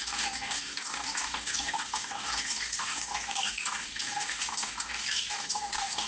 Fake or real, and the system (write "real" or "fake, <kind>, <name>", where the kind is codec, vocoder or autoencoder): fake, codec, DAC